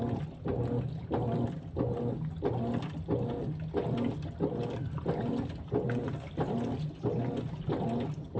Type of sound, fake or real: real